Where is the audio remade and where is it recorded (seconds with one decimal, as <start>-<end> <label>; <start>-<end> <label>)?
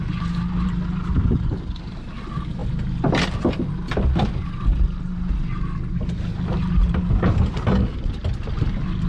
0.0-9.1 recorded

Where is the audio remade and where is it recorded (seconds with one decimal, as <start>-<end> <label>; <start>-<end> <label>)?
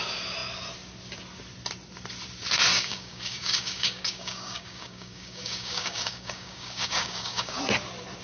0.0-2.7 recorded; 2.7-7.6 remade; 7.6-8.2 recorded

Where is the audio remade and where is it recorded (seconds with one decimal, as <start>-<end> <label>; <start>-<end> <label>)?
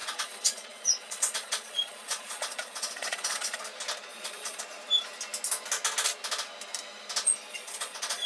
0.0-3.6 remade; 3.6-4.1 recorded; 4.1-4.6 remade; 4.6-7.5 recorded; 7.5-8.3 remade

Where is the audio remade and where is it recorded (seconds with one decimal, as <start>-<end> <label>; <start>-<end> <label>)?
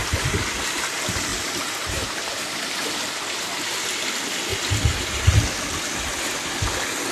0.0-1.3 recorded; 1.3-2.7 remade; 2.7-7.1 recorded